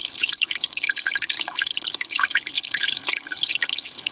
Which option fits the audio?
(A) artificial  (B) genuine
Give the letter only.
A